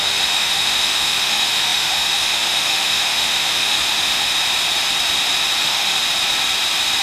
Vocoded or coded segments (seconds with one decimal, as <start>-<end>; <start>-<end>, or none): 0.0-4.3; 5.6-6.0